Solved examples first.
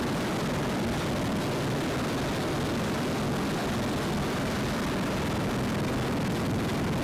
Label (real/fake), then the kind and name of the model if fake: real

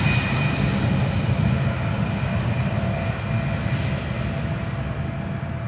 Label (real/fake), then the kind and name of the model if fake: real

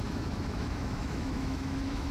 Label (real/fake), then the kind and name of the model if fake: fake, autoencoder, DAC-VAE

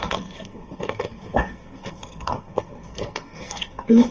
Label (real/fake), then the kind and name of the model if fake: fake, codec, SNAC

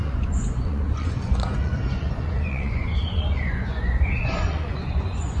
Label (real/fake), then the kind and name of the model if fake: fake, vocoder, Vocos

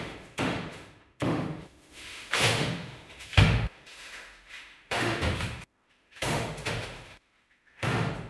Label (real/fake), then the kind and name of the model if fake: fake, autoencoder, DAC-VAE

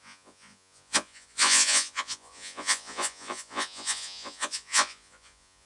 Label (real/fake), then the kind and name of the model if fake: fake, vocoder, Vocos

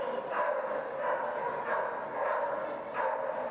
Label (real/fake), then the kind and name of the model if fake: real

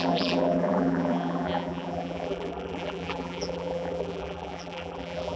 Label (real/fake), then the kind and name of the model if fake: fake, vocoder, BigVGAN v2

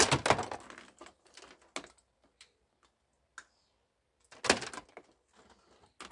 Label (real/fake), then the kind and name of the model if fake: real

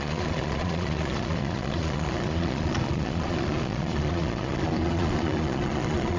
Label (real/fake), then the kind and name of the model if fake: fake, vocoder, Vocos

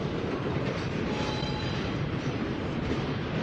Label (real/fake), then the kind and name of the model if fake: fake, vocoder, BigVGAN v2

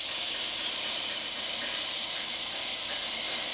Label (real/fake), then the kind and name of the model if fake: real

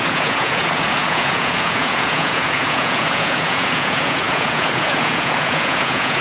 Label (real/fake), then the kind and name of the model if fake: fake, vocoder, Vocos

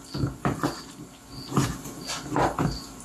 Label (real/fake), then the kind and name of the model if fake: real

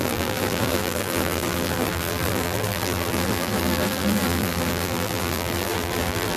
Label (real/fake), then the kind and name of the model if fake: fake, vocoder, BigVGAN v2